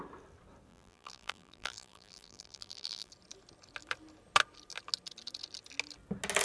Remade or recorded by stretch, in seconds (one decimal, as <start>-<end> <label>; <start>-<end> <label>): 0.0-0.7 recorded; 0.7-3.1 remade; 3.1-6.4 recorded